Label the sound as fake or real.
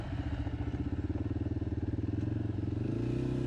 real